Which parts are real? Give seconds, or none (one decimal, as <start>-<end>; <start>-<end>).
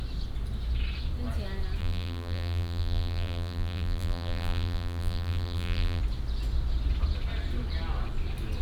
0.0-1.8; 6.0-8.6